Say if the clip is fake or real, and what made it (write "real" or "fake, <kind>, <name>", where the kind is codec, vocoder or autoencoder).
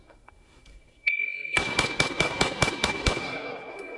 fake, codec, SNAC